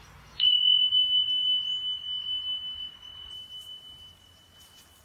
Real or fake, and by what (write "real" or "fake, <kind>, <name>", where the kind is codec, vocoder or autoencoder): real